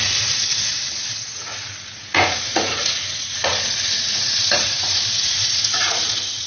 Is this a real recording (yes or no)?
no